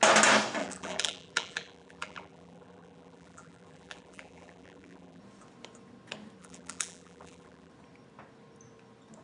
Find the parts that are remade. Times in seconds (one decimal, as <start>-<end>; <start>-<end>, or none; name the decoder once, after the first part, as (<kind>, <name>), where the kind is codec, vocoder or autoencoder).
0.6-5.2 (vocoder, BigVGAN v2); 6.4-7.7